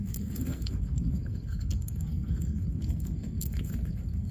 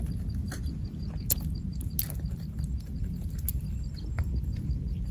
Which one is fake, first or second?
first